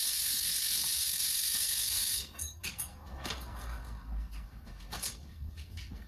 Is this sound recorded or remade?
remade